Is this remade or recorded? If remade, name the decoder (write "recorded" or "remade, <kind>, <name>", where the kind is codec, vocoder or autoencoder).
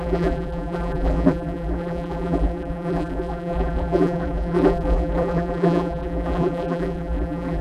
remade, vocoder, BigVGAN v2